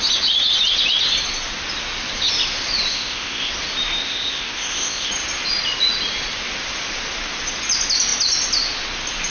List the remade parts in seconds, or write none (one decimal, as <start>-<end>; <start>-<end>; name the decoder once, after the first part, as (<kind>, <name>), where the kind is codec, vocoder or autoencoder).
2.9-3.5 (codec, ZipCodec); 4.0-5.1